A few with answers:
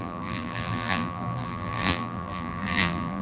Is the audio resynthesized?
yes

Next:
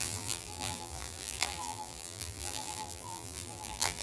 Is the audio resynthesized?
yes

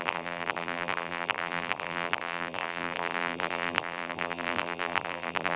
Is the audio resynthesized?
yes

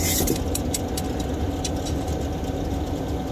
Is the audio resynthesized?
no